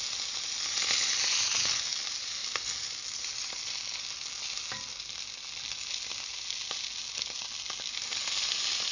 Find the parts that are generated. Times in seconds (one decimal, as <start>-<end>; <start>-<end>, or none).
none